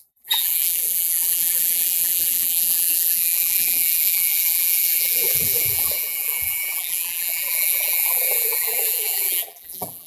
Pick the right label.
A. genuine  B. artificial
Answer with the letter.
B